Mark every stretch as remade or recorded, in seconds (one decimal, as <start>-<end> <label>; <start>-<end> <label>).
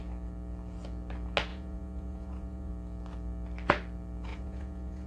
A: 0.0-1.5 recorded; 1.5-2.7 remade; 2.7-4.3 recorded; 4.3-5.1 remade